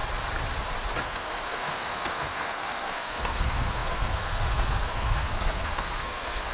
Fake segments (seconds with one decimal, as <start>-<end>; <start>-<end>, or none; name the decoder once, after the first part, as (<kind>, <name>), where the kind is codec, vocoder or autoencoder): 1.0-6.5 (codec, SNAC)

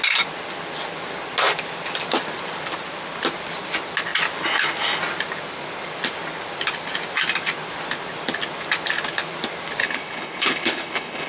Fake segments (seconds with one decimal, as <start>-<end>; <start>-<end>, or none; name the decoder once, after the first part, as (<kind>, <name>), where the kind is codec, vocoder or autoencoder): 9.8-11.3 (codec, HILCodec)

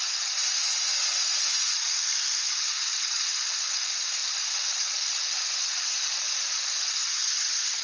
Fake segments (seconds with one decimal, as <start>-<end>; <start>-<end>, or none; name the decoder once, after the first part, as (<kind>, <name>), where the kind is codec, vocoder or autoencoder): 0.0-0.5 (vocoder, Vocos); 1.1-7.8